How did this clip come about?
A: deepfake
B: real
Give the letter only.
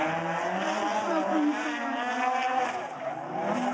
B